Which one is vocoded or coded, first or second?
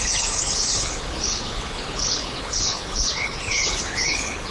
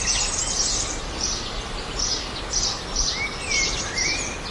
first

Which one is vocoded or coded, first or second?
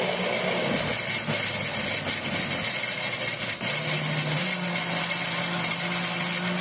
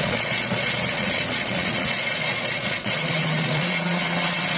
second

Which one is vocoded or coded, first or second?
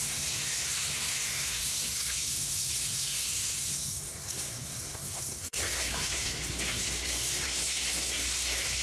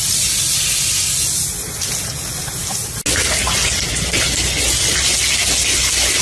first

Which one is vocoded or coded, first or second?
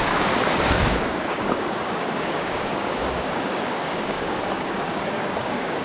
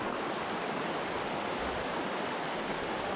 first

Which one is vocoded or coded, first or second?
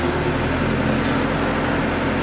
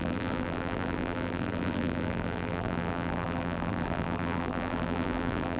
second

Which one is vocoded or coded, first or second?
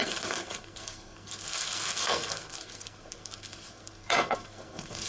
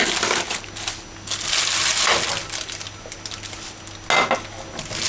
first